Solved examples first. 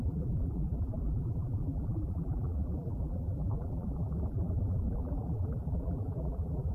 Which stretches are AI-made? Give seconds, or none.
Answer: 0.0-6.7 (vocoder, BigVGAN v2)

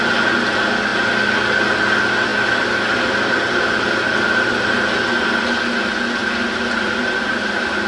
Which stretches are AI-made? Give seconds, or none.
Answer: 6.2-7.4 (vocoder, BigVGAN v2)

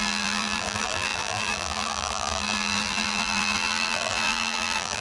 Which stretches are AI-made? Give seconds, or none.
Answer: 0.0-5.0 (vocoder, BigVGAN v2)

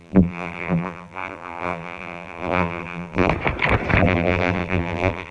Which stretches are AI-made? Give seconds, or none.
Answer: 0.0-3.3 (vocoder, BigVGAN v2); 4.0-5.3

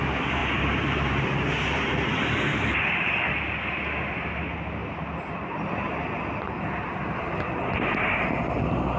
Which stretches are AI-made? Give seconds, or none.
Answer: 0.4-3.1 (vocoder, BigVGAN v2)

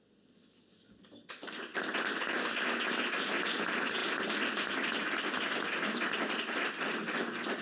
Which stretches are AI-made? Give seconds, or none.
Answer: 4.0-5.2 (vocoder, BigVGAN v2)

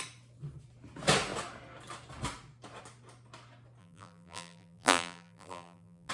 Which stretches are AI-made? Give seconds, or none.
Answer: 3.8-6.1 (vocoder, BigVGAN v2)

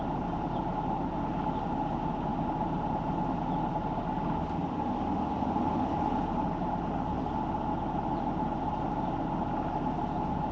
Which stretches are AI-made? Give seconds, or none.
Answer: none